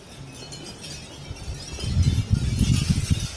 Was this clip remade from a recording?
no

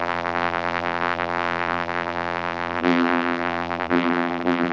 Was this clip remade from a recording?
yes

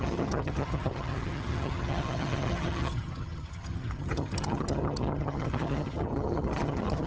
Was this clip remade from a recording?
yes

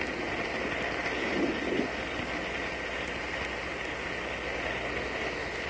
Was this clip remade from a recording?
no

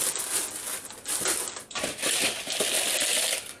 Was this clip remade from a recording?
no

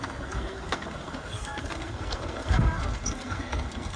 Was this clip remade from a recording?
yes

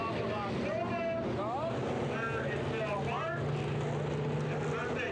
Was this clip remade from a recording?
no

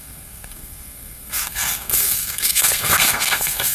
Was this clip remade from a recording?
yes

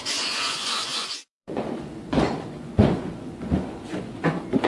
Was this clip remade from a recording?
yes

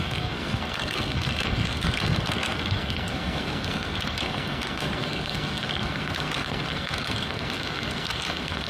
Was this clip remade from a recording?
yes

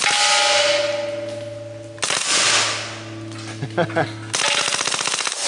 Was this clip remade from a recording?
no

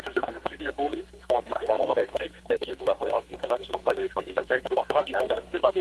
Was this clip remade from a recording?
yes